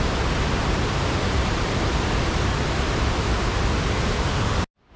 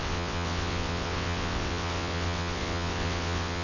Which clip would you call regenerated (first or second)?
second